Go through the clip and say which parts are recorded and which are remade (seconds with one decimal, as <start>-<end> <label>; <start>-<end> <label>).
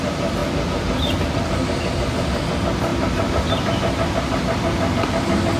0.0-5.6 recorded